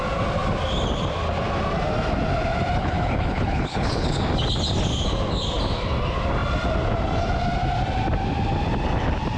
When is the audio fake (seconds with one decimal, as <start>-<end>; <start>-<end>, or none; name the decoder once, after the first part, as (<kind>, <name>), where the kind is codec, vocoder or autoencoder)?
2.8-4.2 (codec, HILCodec)

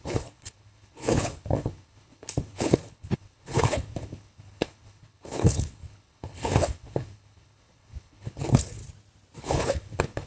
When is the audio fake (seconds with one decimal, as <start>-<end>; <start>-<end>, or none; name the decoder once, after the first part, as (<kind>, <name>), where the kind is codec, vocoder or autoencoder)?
0.0-8.8 (codec, HILCodec); 9.4-10.3